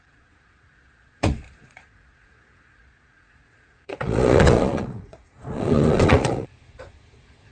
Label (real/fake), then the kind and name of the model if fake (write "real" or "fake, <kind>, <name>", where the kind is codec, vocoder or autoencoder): fake, vocoder, Vocos